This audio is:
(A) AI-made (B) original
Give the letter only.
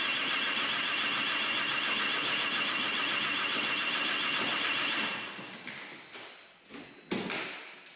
B